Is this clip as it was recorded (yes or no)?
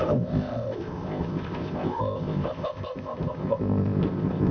no